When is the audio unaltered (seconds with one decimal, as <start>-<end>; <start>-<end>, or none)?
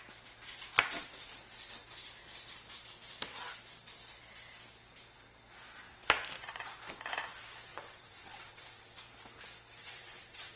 0.0-7.7; 9.0-9.8